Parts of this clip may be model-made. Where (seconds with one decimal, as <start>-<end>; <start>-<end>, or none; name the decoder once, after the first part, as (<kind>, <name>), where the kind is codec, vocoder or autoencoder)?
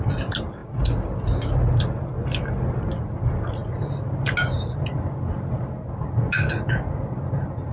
none